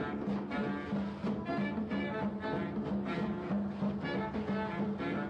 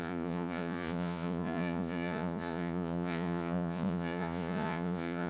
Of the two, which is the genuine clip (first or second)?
first